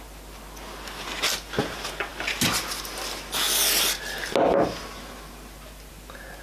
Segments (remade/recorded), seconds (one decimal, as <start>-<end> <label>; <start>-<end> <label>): 0.0-6.4 recorded